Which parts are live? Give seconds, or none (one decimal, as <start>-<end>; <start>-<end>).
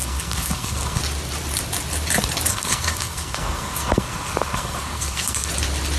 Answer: 1.0-2.5; 5.5-6.0